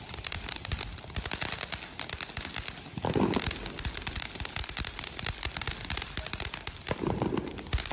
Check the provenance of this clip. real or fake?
real